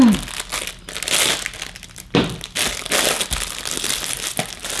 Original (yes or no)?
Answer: yes